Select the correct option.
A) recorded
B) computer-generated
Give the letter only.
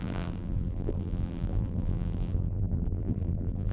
B